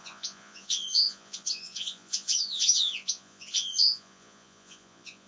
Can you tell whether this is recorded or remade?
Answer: remade